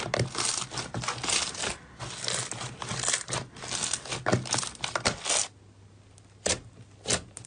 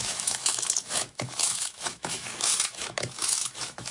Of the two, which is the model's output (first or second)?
second